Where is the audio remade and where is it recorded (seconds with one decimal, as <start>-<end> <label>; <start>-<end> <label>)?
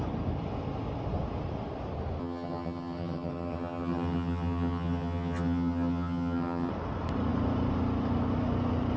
0.0-2.2 recorded; 2.2-6.7 remade; 6.7-9.0 recorded